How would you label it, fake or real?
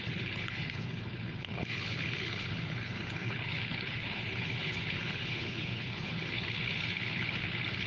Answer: fake